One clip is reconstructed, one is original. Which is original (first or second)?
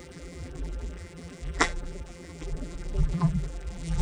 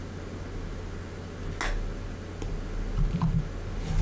second